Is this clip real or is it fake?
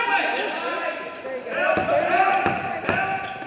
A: real